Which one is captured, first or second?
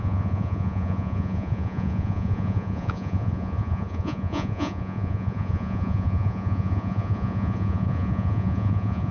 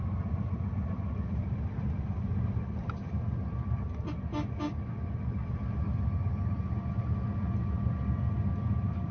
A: second